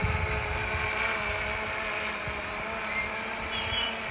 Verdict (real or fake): real